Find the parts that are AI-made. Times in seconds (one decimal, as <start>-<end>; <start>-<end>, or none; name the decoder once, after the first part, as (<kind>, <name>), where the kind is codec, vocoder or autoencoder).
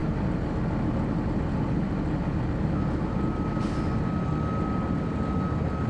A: none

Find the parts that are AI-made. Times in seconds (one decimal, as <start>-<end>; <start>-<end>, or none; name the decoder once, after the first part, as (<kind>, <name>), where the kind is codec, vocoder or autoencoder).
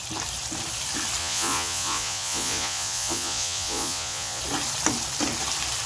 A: 1.2-4.4 (vocoder, Vocos)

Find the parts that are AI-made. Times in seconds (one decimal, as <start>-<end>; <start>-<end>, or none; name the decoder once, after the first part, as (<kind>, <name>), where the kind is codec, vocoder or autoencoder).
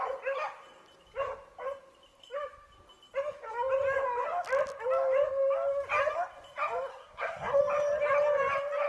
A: 6.9-7.6 (codec, SNAC)